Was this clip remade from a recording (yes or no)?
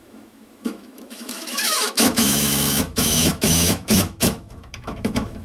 yes